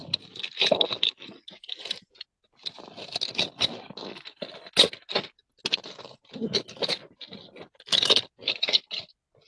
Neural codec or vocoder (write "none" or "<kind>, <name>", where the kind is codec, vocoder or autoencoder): none